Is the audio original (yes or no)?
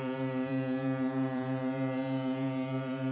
no